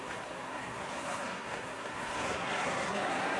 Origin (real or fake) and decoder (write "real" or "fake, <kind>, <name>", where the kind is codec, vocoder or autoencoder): fake, codec, SNAC